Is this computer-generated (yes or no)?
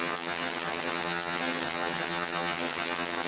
yes